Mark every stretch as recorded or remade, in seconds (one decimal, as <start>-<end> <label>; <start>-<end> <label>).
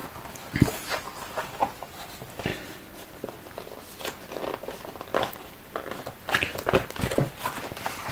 0.0-2.5 recorded; 2.5-4.0 remade; 4.0-8.1 recorded